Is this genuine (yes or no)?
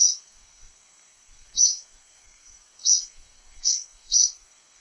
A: no